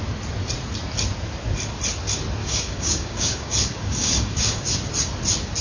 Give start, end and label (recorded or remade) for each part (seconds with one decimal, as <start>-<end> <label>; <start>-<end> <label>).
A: 0.0-2.4 recorded; 2.4-4.6 remade; 4.6-5.6 recorded